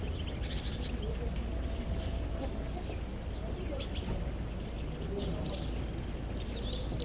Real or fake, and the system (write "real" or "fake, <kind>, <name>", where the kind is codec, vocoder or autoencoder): real